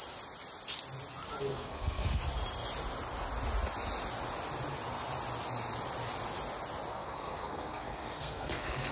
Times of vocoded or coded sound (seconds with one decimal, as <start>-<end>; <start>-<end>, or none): 1.5-2.2; 6.9-8.9